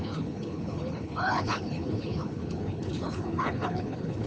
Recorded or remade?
remade